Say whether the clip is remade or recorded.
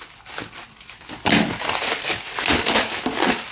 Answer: recorded